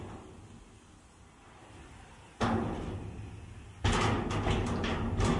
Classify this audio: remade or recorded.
recorded